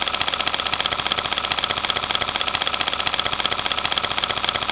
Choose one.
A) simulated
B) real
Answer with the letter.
B